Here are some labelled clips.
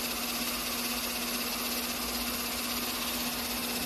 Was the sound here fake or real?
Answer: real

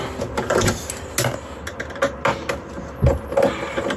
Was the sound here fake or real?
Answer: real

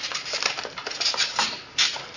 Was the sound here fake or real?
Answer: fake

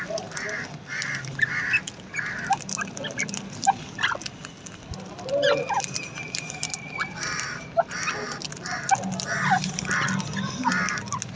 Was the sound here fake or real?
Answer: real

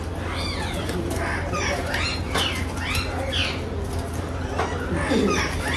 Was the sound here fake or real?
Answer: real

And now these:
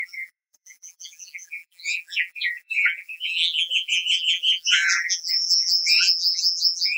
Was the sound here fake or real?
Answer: fake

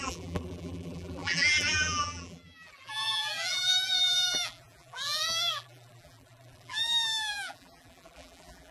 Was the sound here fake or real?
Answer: fake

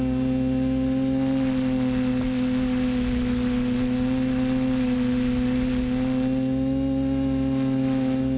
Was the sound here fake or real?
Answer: real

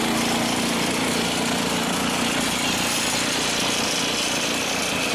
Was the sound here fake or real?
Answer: real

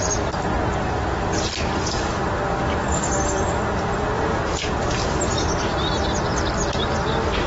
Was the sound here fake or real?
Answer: real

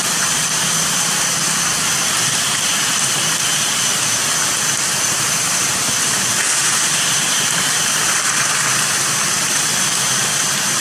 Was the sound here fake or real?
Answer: fake